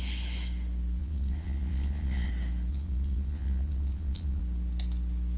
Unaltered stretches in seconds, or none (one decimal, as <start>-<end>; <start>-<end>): 0.0-1.0; 2.3-2.7; 4.4-5.4